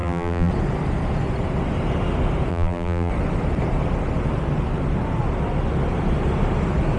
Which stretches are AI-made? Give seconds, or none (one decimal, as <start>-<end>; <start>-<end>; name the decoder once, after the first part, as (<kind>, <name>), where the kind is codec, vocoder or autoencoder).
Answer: 0.0-0.5 (vocoder, BigVGAN v2); 2.5-3.1